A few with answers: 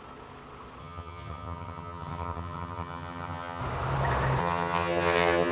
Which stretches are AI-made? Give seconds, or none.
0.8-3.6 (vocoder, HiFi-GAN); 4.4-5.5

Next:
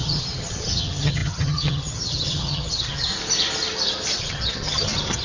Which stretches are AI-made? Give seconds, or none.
0.0-3.1 (vocoder, HiFi-GAN); 4.2-5.2

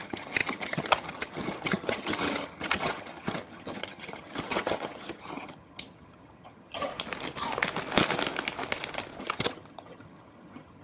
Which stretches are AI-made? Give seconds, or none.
0.0-6.9 (vocoder, HiFi-GAN); 9.2-10.8

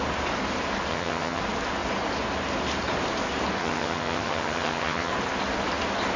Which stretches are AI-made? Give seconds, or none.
0.9-1.4 (vocoder, HiFi-GAN); 3.6-5.1

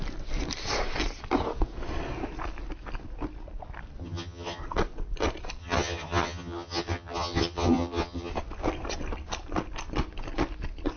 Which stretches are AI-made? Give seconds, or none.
4.0-4.6 (vocoder, HiFi-GAN); 5.6-8.3

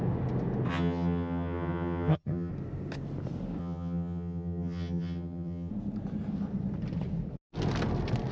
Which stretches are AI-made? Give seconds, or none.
0.7-2.5 (vocoder, HiFi-GAN); 3.6-5.7

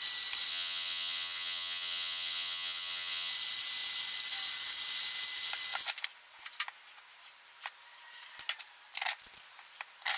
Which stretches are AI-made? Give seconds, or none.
0.5-3.3 (vocoder, HiFi-GAN)

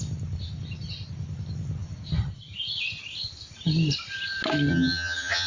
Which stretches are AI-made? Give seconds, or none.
4.7-5.5 (vocoder, HiFi-GAN)